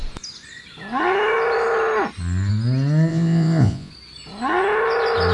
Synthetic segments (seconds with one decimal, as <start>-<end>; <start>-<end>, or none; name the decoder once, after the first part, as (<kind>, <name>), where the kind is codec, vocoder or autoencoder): 3.1-3.9 (vocoder, Vocos)